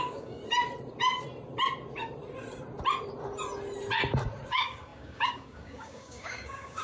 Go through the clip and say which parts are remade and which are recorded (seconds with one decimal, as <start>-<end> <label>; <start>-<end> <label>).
0.0-0.4 remade; 0.4-4.5 recorded; 4.5-6.8 remade